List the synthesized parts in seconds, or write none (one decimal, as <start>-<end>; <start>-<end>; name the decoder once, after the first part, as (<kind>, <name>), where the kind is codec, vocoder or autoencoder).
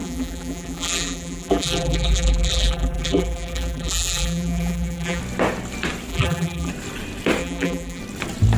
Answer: 0.0-5.2 (vocoder, BigVGAN v2); 6.1-6.7; 7.4-8.0